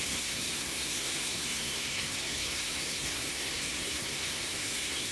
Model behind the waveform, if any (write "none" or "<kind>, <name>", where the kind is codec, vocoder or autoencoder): codec, SNAC